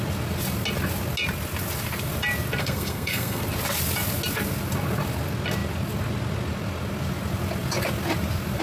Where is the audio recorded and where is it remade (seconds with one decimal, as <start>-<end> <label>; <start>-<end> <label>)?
0.0-2.6 recorded; 2.6-3.4 remade; 3.4-8.6 recorded